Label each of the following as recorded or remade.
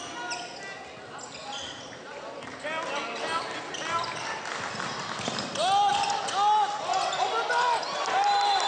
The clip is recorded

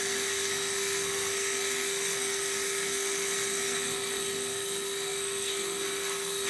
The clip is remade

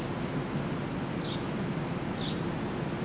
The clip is recorded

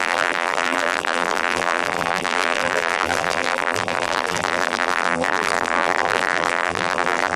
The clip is remade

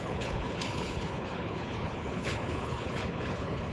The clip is remade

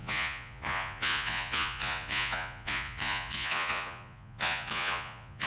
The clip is remade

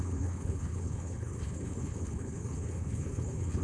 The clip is remade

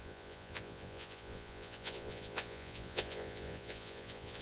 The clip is remade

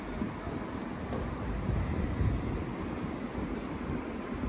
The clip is recorded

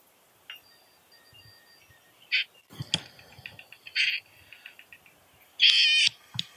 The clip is recorded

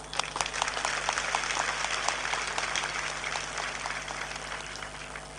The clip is recorded